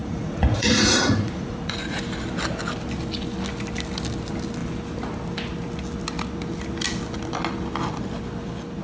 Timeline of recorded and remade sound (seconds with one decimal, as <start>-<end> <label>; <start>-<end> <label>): 0.0-2.0 remade; 2.0-8.8 recorded

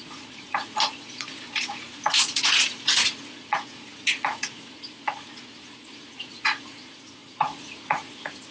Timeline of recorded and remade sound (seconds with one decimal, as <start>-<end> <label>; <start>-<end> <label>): 0.0-8.5 remade

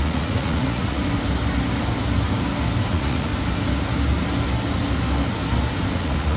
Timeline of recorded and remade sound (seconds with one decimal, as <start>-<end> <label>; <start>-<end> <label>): 0.0-1.0 remade; 1.0-2.9 recorded; 2.9-3.3 remade; 3.3-5.9 recorded; 5.9-6.4 remade

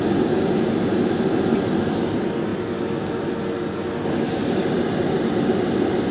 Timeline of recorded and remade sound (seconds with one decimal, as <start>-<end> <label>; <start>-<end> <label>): 0.0-6.1 recorded